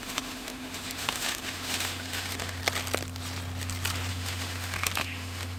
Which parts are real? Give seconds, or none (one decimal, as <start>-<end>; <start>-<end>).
2.6-4.1